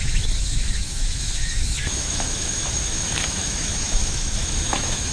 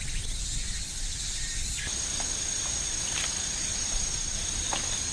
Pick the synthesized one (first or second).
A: first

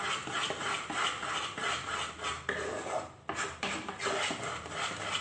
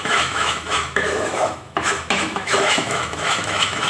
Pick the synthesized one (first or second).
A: second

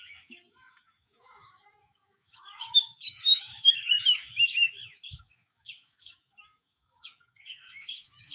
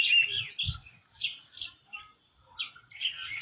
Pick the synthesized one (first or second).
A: first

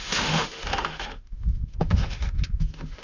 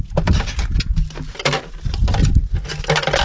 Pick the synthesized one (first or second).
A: first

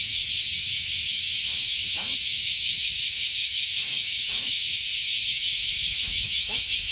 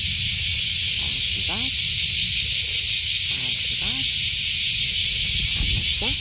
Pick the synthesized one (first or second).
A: first